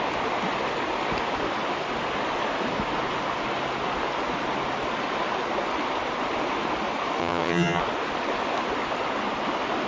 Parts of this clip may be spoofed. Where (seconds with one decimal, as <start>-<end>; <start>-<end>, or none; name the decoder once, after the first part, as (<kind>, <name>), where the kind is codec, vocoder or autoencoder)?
7.2-7.8 (vocoder, HiFi-GAN)